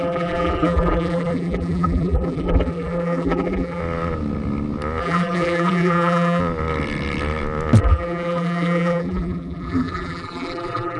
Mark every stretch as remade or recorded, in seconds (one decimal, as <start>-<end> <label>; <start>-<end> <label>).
0.0-3.8 remade; 3.8-5.0 recorded; 5.0-6.4 remade; 6.4-7.8 recorded; 7.8-11.0 remade